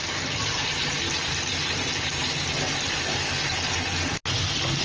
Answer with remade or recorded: recorded